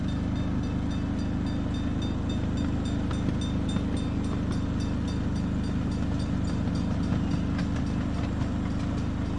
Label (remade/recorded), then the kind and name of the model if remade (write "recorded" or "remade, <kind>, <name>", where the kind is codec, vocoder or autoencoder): recorded